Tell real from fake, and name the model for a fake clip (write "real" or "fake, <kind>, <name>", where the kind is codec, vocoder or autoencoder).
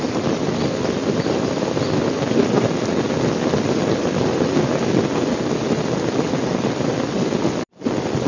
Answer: real